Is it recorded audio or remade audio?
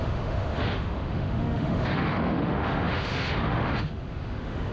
remade